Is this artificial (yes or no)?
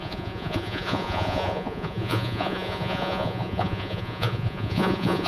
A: yes